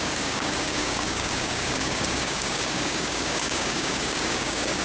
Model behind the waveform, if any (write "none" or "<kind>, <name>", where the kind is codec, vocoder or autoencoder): codec, DAC